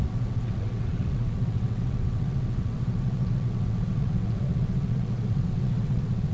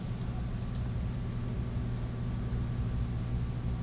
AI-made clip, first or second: first